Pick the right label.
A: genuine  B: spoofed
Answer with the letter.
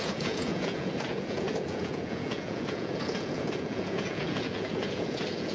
B